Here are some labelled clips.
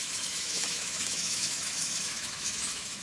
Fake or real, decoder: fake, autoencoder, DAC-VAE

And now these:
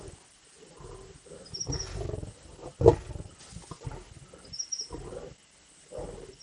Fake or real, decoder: real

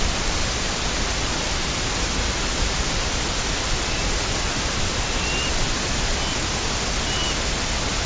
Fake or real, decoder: real